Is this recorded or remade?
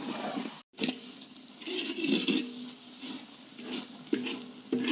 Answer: recorded